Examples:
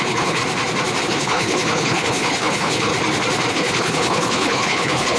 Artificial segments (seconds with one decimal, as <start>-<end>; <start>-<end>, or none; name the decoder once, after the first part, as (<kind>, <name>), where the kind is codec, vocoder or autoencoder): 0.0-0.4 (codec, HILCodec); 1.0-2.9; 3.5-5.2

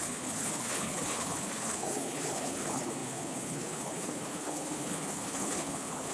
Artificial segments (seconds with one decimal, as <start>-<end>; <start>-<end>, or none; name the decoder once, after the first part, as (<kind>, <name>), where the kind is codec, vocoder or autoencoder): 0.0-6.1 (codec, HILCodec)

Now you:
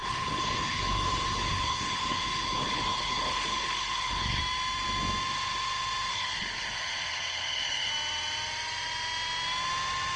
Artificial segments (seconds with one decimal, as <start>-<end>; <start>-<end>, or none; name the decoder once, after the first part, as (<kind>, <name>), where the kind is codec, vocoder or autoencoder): 0.0-4.4 (codec, HILCodec); 6.1-7.9

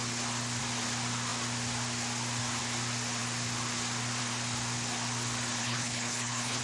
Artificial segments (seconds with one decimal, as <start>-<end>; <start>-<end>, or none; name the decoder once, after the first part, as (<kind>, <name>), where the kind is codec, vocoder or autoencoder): 5.6-6.6 (codec, HILCodec)

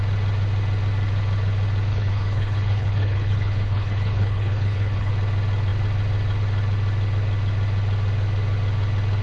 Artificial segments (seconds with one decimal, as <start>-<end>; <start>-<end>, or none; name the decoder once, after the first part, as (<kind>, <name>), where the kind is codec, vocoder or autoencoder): 1.9-5.1 (codec, HILCodec)